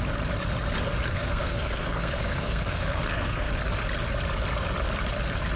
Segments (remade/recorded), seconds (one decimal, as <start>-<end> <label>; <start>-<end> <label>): 0.0-1.1 recorded; 1.1-3.5 remade; 3.5-5.6 recorded